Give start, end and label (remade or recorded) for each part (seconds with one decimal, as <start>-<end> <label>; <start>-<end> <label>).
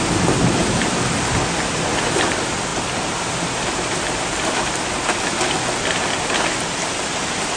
0.0-7.6 recorded